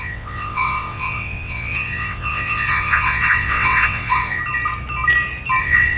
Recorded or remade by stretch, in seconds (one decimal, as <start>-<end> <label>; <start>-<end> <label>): 0.0-4.4 remade; 4.4-5.6 recorded; 5.6-6.0 remade